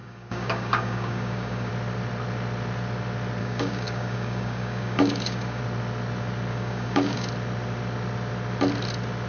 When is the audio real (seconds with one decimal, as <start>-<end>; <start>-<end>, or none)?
1.7-3.4; 5.6-6.5; 7.3-9.3